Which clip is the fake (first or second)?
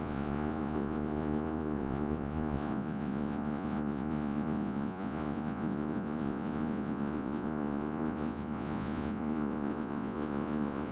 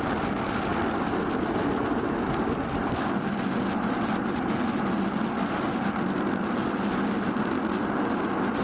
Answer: first